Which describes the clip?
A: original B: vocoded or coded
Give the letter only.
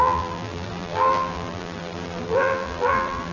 B